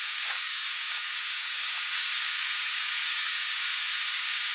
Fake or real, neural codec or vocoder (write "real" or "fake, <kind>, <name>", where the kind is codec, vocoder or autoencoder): fake, codec, DAC